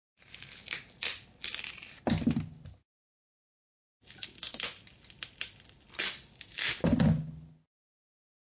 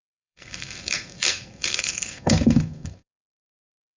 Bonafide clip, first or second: first